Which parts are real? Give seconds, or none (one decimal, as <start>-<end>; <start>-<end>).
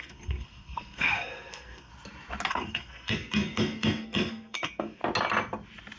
1.9-2.5; 5.0-6.0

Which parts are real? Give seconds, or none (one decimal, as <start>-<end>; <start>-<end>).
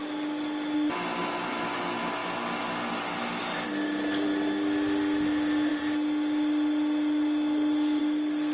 0.0-8.5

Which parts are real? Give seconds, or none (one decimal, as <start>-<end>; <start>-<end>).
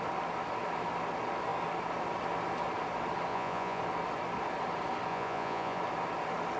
0.0-3.3; 3.8-5.1; 5.8-6.6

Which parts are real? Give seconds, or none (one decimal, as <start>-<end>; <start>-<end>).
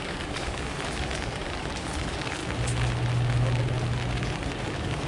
2.4-4.6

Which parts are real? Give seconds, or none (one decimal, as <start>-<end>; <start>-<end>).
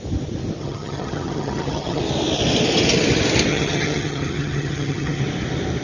0.0-0.6; 2.0-3.5; 5.2-5.8